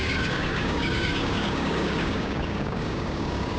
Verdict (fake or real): fake